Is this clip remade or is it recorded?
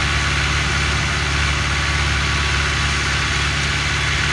recorded